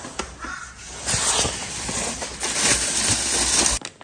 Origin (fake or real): real